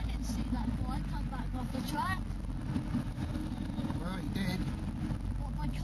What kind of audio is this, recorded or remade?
recorded